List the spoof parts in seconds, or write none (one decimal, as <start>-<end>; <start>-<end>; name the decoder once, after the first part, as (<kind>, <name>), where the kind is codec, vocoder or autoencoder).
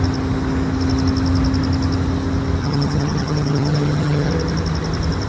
2.6-4.3 (vocoder, HiFi-GAN)